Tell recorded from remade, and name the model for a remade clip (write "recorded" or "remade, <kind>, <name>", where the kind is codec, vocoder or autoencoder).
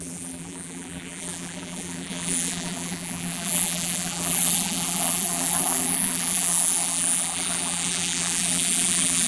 remade, vocoder, BigVGAN v2